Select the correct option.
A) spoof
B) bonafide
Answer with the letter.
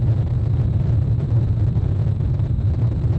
A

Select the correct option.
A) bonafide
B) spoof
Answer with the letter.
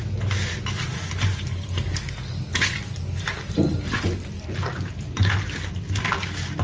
A